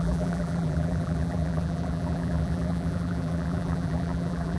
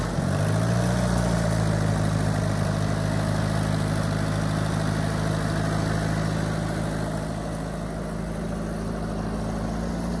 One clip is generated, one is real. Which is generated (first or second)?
first